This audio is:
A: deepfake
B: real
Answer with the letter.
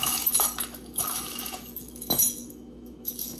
A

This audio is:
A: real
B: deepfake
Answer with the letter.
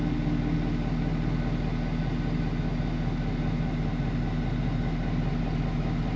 A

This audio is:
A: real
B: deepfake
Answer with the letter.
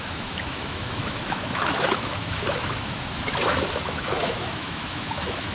B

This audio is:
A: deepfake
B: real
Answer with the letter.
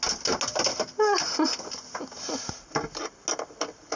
B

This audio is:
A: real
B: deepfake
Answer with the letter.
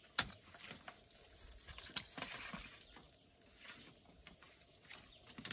A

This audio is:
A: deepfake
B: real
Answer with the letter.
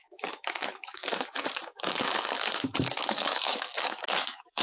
A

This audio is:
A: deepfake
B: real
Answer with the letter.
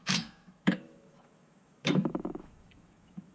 A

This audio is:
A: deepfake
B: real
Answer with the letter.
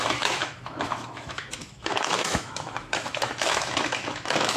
A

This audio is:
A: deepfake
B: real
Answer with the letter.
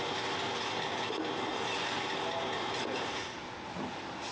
B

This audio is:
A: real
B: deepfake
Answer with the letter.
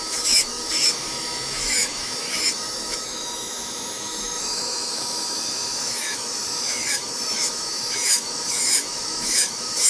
B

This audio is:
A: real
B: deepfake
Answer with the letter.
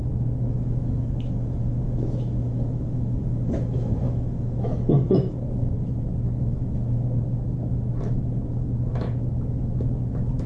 B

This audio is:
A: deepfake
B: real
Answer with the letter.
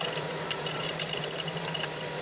B